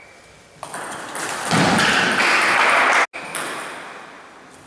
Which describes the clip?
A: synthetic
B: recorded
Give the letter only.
B